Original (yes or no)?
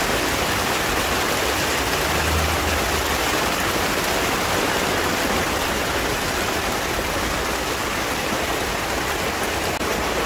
yes